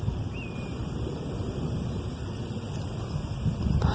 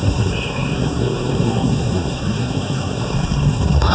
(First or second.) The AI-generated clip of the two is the second